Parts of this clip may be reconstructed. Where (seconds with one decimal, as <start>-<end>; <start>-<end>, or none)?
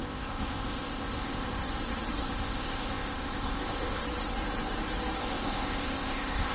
0.0-1.6; 2.3-4.0; 5.2-6.5